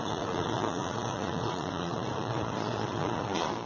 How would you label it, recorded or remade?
remade